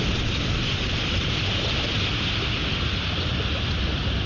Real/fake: real